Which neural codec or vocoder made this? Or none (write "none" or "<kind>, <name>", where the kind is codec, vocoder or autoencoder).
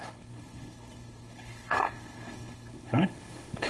codec, HILCodec